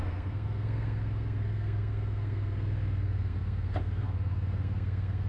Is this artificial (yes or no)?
yes